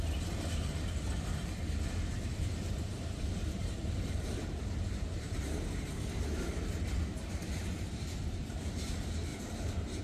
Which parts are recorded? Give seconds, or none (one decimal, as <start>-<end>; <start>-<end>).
0.0-2.3; 5.9-7.6; 8.6-9.3